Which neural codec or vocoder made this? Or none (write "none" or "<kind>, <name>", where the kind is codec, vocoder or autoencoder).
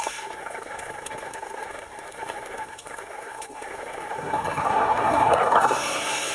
codec, SNAC